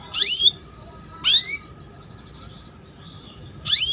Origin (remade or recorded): remade